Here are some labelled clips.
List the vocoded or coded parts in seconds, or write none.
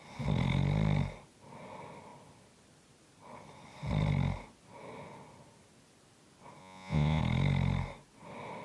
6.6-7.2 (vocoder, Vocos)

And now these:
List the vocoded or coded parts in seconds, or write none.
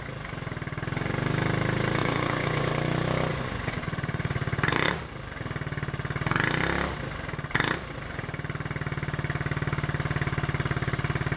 2.0-2.7 (vocoder, Vocos); 3.3-5.0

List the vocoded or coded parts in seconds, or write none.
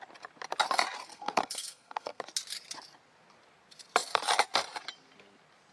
1.1-2.2 (codec, SNAC)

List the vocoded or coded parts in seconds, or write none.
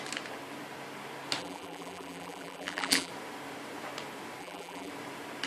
1.4-3.1 (vocoder, BigVGAN v2); 4.4-4.9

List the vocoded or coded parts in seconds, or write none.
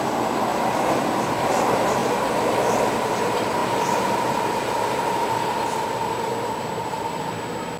0.5-1.5 (vocoder, BigVGAN v2); 3.6-7.8